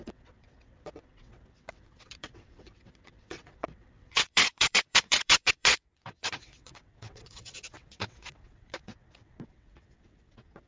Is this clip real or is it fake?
fake